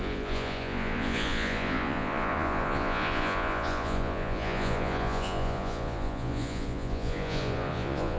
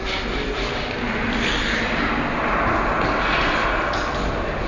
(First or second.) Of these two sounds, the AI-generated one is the first